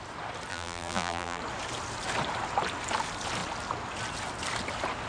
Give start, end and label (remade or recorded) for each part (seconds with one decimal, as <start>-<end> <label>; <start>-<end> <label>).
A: 0.0-0.5 recorded; 0.5-1.4 remade; 1.4-5.1 recorded